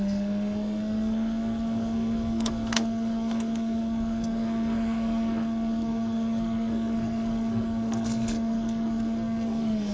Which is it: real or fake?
fake